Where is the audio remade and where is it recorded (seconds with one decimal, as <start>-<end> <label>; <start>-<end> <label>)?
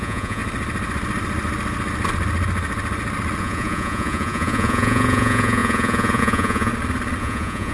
0.0-0.4 remade; 0.4-3.4 recorded; 3.4-6.7 remade; 6.7-7.2 recorded; 7.2-7.7 remade